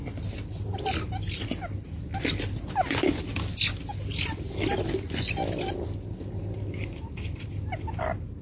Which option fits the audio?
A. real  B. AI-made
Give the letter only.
A